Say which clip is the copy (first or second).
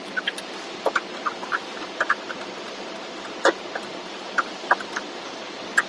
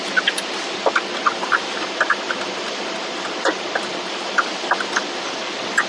first